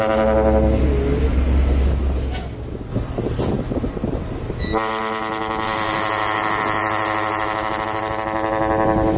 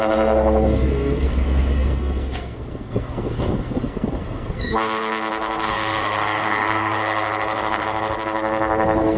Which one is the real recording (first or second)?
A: first